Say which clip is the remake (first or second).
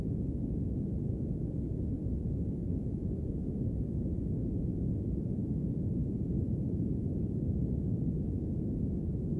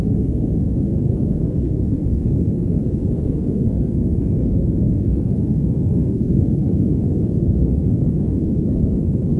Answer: second